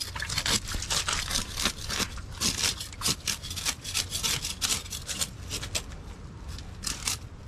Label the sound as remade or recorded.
recorded